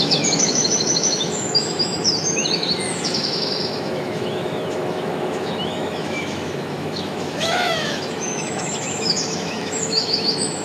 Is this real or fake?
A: fake